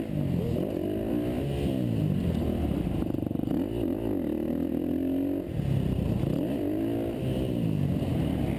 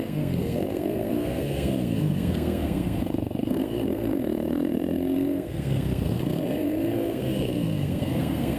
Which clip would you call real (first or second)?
first